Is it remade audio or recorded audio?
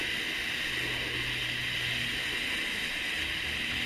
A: recorded